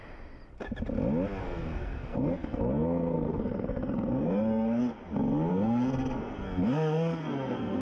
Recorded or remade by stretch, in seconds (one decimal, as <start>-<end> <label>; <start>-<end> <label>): 0.0-1.4 recorded; 1.4-4.8 remade; 4.8-5.5 recorded; 5.5-7.8 remade